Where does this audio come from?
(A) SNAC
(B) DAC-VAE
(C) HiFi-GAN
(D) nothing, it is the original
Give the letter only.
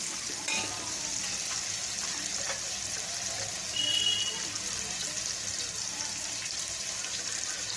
D